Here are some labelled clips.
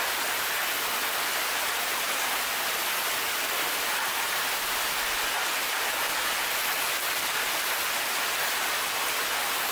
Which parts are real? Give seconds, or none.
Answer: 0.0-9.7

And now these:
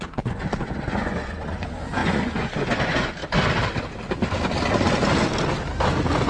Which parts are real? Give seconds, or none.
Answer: 3.2-6.3

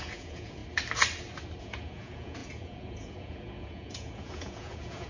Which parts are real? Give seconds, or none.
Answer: 0.6-1.6

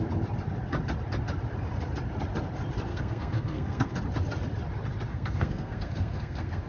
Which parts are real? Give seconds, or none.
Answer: 0.0-2.9; 4.0-5.1